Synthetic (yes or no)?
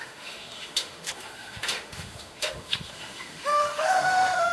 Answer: yes